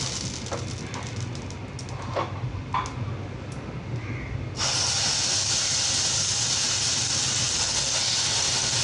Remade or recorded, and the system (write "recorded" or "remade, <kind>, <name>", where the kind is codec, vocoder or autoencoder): recorded